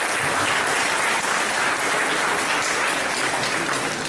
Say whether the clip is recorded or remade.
recorded